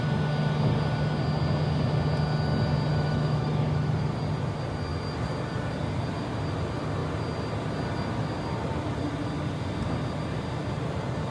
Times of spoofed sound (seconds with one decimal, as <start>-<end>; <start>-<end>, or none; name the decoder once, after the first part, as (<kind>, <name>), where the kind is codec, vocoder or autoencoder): 2.9-3.9 (autoencoder, DAC-VAE)